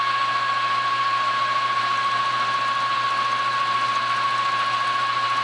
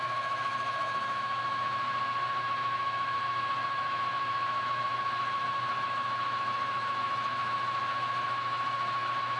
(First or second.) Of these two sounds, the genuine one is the first